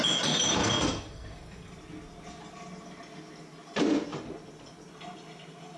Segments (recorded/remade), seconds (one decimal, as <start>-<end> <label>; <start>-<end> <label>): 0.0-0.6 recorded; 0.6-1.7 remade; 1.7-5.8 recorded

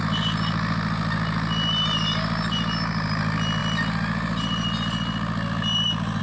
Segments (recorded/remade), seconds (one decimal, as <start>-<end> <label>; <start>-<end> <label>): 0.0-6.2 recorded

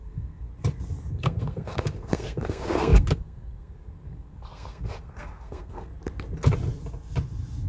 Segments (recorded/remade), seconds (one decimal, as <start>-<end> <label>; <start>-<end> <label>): 0.0-0.5 remade; 0.5-1.1 recorded; 1.1-5.9 remade; 5.9-7.7 recorded

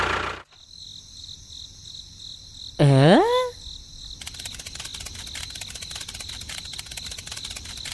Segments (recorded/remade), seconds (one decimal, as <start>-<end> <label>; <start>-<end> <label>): 0.0-7.9 recorded